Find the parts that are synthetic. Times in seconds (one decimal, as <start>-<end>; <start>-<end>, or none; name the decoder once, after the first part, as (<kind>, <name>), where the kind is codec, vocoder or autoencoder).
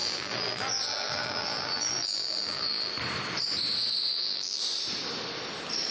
0.0-2.9 (vocoder, BigVGAN v2); 4.1-4.6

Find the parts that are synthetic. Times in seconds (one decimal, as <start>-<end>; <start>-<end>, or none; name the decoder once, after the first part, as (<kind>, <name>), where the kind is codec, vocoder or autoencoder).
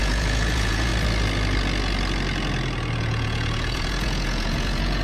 0.0-0.9 (vocoder, Vocos); 3.0-5.0